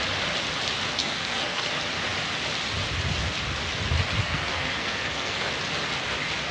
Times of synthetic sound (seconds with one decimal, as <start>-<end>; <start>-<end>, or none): 1.0-1.7; 4.2-5.5